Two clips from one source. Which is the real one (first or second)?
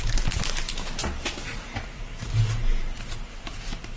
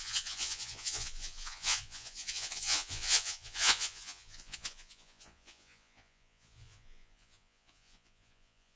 first